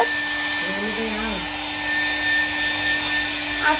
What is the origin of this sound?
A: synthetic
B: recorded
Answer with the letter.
B